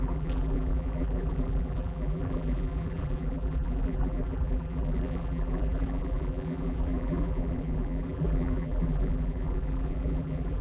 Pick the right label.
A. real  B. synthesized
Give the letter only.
B